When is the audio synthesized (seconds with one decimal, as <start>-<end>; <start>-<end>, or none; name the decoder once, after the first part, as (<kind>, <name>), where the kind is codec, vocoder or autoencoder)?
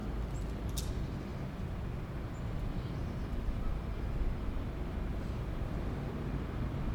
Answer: 3.0-3.7 (vocoder, BigVGAN v2); 5.1-6.1